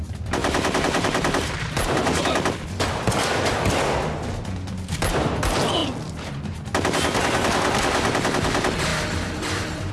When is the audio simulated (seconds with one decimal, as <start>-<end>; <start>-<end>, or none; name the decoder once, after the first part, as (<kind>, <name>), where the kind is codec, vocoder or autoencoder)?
0.4-2.2 (vocoder, BigVGAN v2); 8.9-9.9